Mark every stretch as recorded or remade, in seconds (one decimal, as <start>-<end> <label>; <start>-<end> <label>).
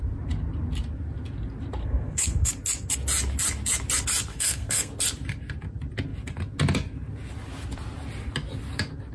0.0-1.8 recorded; 1.8-2.5 remade; 2.5-4.3 recorded; 4.3-4.9 remade; 4.9-9.1 recorded